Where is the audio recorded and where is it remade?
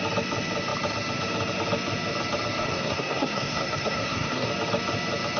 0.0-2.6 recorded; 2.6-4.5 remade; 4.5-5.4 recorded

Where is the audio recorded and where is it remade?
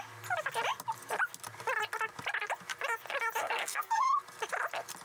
0.0-3.4 recorded; 3.4-4.1 remade; 4.1-5.0 recorded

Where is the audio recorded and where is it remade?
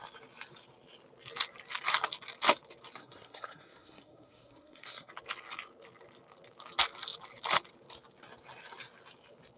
0.0-3.0 recorded; 3.0-5.1 remade; 5.1-9.6 recorded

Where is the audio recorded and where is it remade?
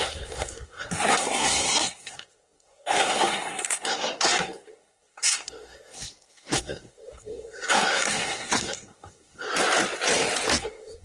0.0-9.5 remade; 9.5-10.6 recorded; 10.6-11.0 remade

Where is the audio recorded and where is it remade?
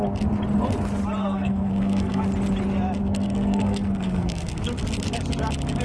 0.0-1.2 recorded; 1.2-2.2 remade; 2.2-3.0 recorded; 3.0-4.5 remade; 4.5-5.8 recorded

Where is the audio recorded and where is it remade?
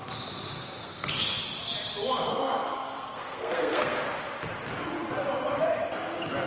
0.0-0.8 recorded; 0.8-1.4 remade; 1.4-2.3 recorded; 2.3-4.0 remade; 4.0-6.5 recorded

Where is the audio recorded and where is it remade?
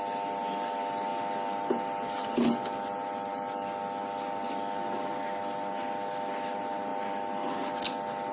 0.0-8.3 recorded